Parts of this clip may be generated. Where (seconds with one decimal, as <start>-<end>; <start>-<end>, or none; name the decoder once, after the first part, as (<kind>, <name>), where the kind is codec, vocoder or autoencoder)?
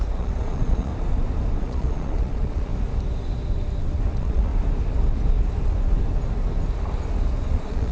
0.0-0.9 (vocoder, Vocos); 1.6-2.7; 4.1-4.5; 7.5-7.9